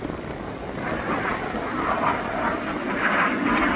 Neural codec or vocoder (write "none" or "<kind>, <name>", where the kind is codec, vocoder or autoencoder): none